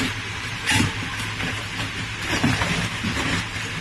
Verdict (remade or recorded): remade